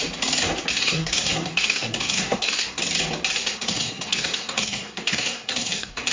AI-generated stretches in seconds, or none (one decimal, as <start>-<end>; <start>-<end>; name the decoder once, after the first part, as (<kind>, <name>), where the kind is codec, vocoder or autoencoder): 0.7-2.8 (codec, SNAC); 3.4-6.1